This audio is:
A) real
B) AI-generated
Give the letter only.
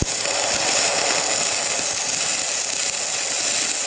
A